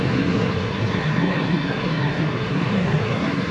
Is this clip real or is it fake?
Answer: fake